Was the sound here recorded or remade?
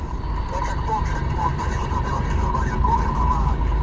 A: remade